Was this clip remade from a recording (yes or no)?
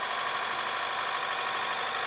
no